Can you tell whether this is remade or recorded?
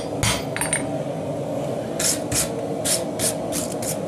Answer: recorded